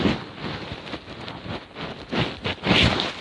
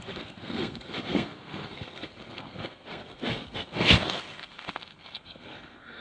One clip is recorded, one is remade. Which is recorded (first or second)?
first